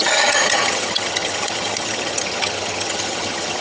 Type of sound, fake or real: fake